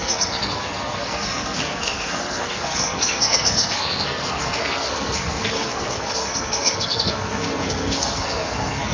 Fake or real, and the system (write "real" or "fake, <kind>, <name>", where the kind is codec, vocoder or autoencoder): fake, codec, SNAC